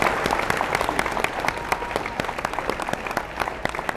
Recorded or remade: recorded